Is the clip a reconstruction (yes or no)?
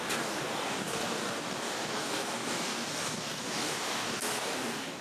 yes